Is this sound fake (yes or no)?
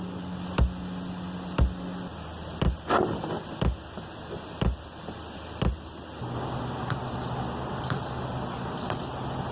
no